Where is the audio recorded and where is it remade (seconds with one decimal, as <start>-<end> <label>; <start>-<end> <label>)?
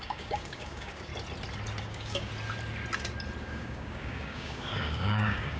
0.0-1.1 remade; 1.1-1.8 recorded; 1.8-2.3 remade; 2.3-3.4 recorded; 3.4-5.6 remade